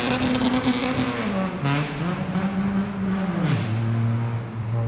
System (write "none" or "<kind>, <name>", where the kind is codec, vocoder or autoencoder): none